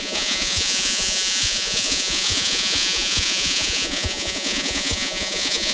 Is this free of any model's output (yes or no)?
no